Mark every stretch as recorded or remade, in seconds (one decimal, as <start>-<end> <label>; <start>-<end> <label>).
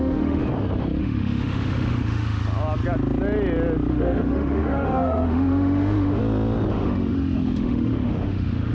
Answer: 0.0-0.4 remade; 0.4-1.0 recorded; 1.0-2.4 remade; 2.4-3.9 recorded; 3.9-6.2 remade; 6.2-6.7 recorded; 6.7-8.7 remade